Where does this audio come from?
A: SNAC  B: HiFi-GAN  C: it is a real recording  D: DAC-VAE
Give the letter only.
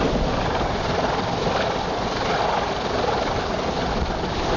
C